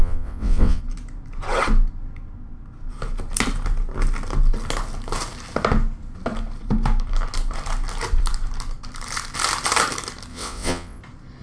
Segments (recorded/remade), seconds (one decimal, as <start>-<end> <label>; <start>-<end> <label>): 0.0-0.8 remade; 0.8-10.3 recorded; 10.3-11.0 remade; 11.0-11.4 recorded